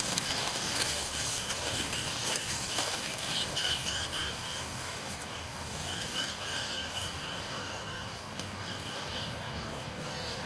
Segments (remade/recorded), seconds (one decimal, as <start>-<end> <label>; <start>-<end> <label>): 0.0-10.5 remade